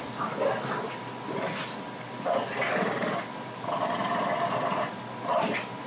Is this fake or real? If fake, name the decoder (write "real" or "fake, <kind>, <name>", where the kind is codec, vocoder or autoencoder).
real